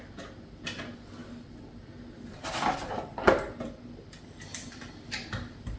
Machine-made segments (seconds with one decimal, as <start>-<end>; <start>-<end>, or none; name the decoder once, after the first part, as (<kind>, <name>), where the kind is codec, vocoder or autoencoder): none

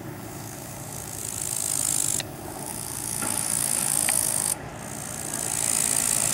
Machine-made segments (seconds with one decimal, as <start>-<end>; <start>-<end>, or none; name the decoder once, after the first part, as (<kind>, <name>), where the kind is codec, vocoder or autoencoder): 0.0-1.2 (codec, DAC); 2.2-4.7